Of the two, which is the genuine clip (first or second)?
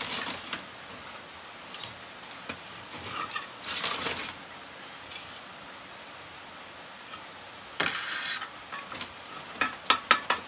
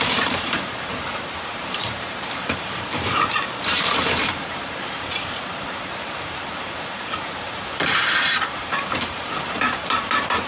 first